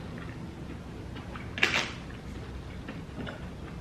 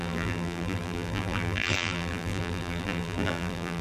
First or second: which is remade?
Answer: second